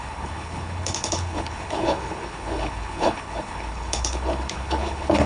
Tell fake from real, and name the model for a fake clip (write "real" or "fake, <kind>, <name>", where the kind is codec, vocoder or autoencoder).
fake, codec, HILCodec